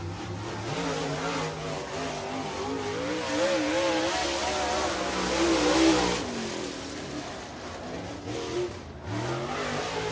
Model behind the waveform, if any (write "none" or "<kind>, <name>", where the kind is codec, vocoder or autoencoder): none